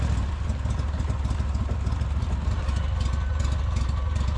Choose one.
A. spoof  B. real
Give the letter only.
B